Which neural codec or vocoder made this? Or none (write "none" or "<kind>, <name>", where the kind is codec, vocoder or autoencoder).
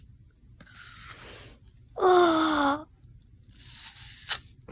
none